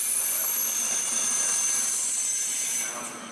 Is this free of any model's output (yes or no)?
yes